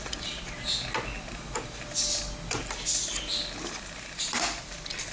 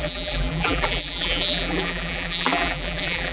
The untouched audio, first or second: first